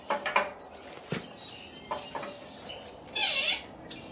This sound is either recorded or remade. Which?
recorded